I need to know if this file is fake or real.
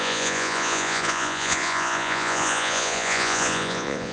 fake